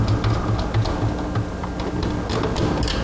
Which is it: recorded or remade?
recorded